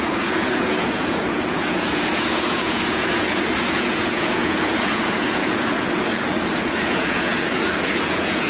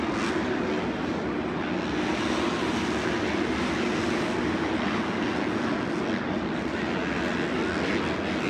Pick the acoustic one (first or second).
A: second